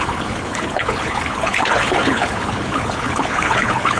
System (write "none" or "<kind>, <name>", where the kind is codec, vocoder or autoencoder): codec, HILCodec